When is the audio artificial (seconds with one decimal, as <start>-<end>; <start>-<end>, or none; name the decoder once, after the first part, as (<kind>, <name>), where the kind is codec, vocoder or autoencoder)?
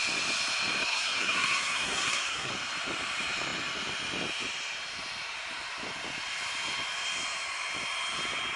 0.8-2.5 (codec, SNAC)